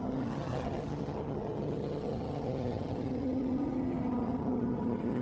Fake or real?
fake